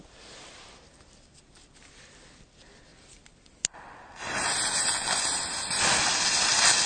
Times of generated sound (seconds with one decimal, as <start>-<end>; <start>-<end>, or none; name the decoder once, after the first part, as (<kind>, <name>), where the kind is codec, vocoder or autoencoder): none